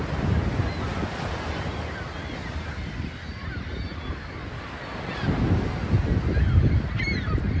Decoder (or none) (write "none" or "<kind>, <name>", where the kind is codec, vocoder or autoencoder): none